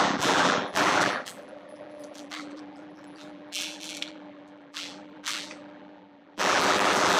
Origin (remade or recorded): remade